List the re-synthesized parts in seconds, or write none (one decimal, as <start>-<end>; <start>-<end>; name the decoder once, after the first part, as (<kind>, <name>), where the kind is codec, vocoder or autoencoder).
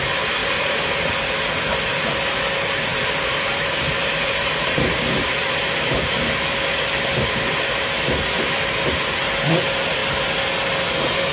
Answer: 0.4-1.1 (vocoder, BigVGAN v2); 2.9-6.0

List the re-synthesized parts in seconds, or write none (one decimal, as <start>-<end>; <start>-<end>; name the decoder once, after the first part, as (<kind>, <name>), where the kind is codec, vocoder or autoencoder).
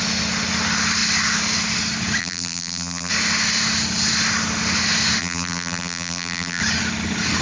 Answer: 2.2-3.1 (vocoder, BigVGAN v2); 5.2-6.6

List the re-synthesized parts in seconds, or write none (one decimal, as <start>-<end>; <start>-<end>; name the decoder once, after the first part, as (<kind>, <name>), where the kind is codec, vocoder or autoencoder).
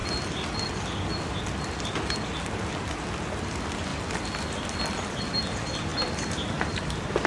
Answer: 5.9-6.7 (vocoder, BigVGAN v2)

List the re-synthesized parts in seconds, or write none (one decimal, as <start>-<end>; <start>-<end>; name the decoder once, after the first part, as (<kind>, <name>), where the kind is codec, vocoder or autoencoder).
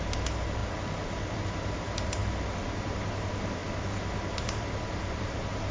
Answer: 0.0-2.2 (vocoder, BigVGAN v2); 3.1-3.6; 4.3-5.7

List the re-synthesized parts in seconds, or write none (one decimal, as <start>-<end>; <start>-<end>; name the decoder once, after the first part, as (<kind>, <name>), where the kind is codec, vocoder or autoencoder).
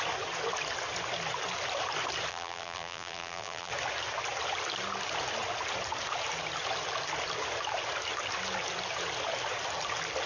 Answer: 2.3-3.7 (vocoder, BigVGAN v2)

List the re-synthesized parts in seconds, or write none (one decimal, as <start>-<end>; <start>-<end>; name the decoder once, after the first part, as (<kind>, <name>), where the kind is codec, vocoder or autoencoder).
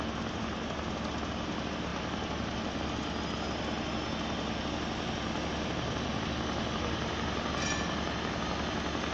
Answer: none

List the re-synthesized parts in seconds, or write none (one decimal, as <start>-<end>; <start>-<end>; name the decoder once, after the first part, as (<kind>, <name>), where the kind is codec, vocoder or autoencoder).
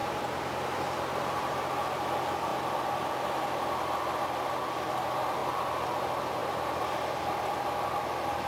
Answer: 0.0-1.6 (vocoder, BigVGAN v2); 2.5-3.1; 6.4-7.6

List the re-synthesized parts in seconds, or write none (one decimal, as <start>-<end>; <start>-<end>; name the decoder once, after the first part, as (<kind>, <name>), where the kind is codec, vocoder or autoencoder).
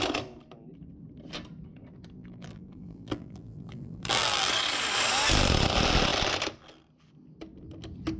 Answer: 2.2-4.5 (vocoder, BigVGAN v2)